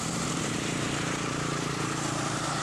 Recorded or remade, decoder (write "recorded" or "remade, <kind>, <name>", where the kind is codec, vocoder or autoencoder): remade, vocoder, BigVGAN v2